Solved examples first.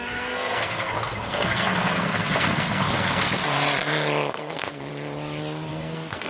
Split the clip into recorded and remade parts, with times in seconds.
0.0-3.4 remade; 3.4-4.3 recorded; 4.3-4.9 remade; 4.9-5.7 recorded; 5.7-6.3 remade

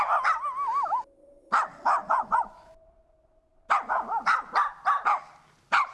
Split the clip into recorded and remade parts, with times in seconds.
0.0-2.0 recorded; 2.0-2.7 remade; 2.7-5.9 recorded

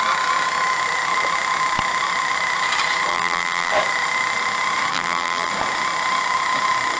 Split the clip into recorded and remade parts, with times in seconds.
0.0-3.1 recorded; 3.1-3.7 remade; 3.7-4.9 recorded; 4.9-5.5 remade; 5.5-7.0 recorded

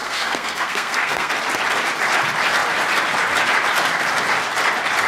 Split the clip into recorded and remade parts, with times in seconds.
0.0-1.3 remade; 1.3-5.1 recorded

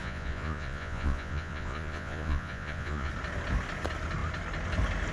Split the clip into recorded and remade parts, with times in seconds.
0.0-3.1 remade; 3.1-5.1 recorded

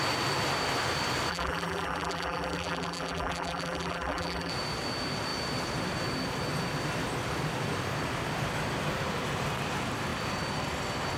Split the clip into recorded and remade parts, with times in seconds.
0.0-1.3 recorded; 1.3-4.5 remade; 4.5-11.2 recorded

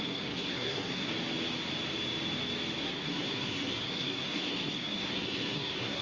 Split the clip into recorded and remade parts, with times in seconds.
0.0-1.1 remade; 1.1-2.8 recorded; 2.8-6.0 remade

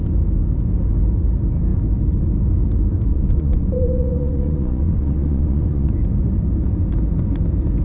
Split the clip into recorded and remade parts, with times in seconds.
0.0-3.1 recorded; 3.1-5.9 remade; 5.9-7.8 recorded